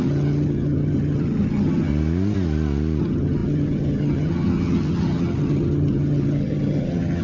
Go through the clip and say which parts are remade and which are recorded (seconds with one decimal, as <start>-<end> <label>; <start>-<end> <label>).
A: 0.0-1.9 remade; 1.9-3.0 recorded; 3.0-7.2 remade